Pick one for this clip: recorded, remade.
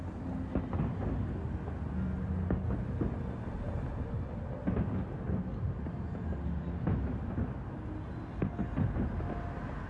recorded